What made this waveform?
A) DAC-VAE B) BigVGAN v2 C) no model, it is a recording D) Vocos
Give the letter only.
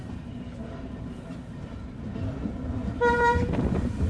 C